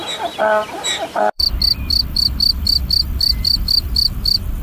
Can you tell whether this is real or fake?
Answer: fake